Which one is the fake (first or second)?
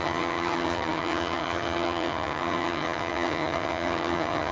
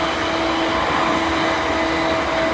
first